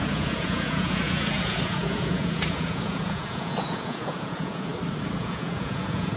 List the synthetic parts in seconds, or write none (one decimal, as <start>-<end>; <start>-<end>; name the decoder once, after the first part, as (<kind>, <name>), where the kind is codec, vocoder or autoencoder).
0.0-4.7 (vocoder, Vocos); 5.2-6.2